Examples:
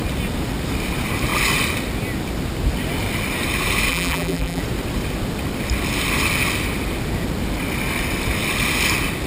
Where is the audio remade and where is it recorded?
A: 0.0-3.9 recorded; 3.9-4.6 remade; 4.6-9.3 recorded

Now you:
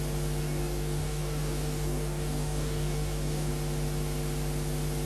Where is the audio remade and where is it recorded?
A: 0.0-0.4 recorded; 0.4-3.5 remade; 3.5-5.1 recorded